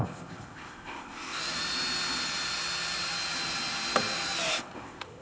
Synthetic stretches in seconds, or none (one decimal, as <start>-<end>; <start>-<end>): 0.0-1.4; 4.5-5.2

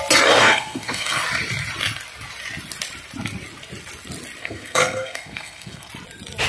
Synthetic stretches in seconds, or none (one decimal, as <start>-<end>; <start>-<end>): 0.4-1.2; 4.4-5.9